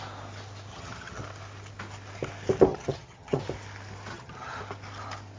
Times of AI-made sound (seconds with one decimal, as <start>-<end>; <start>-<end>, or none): 0.7-1.2; 2.7-3.4; 4.1-4.6